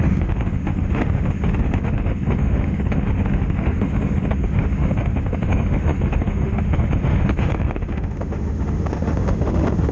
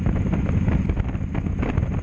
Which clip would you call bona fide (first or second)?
second